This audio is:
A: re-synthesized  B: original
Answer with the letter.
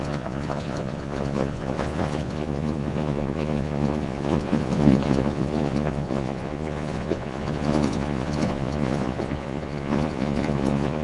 A